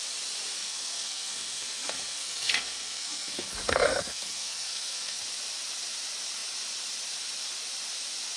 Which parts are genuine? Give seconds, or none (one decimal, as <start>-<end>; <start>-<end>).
0.0-0.6; 5.2-8.4